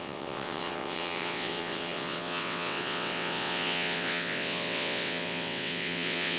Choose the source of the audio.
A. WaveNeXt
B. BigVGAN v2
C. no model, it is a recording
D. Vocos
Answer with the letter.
A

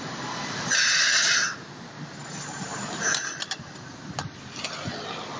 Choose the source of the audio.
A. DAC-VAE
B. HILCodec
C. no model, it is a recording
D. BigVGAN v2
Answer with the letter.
C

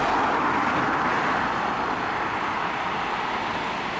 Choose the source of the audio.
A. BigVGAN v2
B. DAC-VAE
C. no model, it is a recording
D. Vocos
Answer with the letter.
C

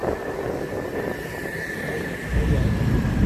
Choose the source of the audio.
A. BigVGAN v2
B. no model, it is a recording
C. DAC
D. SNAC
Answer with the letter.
A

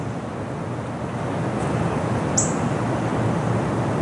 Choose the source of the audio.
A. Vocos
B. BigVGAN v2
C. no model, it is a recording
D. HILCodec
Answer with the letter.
C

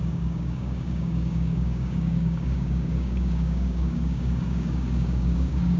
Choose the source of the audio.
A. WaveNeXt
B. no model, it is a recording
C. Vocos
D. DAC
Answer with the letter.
D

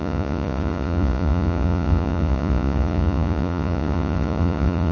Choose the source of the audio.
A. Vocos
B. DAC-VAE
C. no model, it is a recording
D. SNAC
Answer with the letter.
A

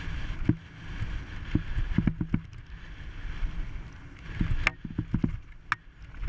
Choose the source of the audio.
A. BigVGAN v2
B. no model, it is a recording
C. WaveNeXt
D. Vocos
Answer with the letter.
B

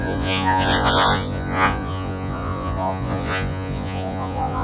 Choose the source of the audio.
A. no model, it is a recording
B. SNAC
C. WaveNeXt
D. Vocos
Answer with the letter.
D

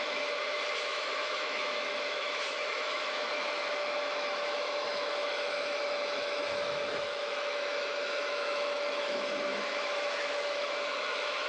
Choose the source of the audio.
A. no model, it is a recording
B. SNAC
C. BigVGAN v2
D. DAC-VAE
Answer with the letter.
D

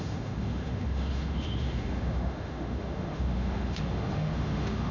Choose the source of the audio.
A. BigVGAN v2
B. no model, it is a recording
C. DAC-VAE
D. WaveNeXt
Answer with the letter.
C